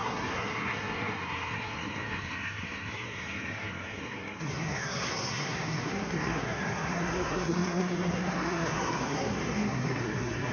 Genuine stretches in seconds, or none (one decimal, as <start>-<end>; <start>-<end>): none